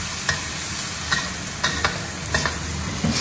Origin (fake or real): real